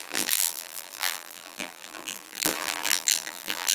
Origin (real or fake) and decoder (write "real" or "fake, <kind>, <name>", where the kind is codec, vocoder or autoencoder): fake, vocoder, BigVGAN v2